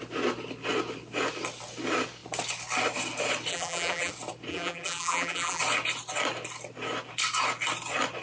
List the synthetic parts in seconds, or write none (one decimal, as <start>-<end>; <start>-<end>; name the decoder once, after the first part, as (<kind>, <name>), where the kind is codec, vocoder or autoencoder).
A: 3.5-4.1 (vocoder, BigVGAN v2); 4.5-5.6